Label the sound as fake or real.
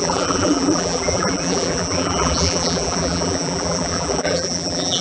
fake